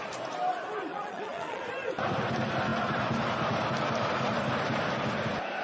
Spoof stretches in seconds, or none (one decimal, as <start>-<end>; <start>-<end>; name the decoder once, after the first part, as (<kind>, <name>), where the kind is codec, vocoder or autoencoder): 0.9-1.6 (vocoder, Vocos)